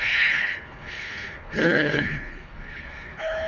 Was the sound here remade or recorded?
remade